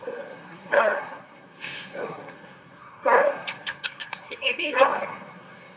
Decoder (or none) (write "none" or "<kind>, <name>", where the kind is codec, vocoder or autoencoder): codec, SNAC